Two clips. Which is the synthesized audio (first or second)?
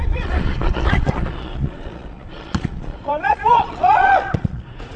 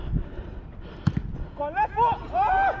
first